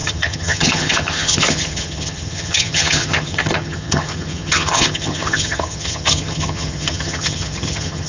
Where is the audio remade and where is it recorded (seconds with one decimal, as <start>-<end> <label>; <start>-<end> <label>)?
0.0-8.1 remade